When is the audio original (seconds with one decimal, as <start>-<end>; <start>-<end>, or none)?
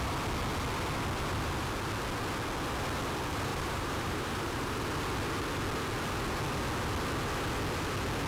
0.0-3.5; 4.8-8.3